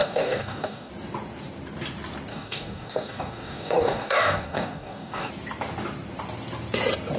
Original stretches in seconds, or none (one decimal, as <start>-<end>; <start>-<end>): 0.9-2.3; 5.3-7.2